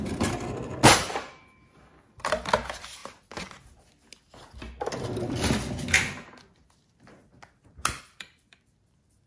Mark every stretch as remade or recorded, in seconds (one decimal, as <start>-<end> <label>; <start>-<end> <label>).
0.0-3.0 remade; 3.0-8.0 recorded; 8.0-9.3 remade